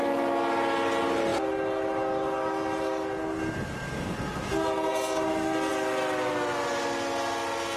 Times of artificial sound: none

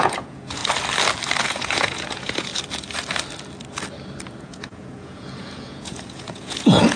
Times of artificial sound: 0.0-0.6 (vocoder, Vocos); 1.4-2.5; 4.4-7.0

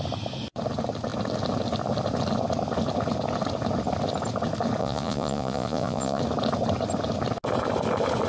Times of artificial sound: 4.8-6.2 (vocoder, Vocos)